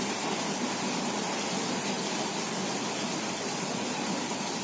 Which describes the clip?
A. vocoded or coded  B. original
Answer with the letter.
B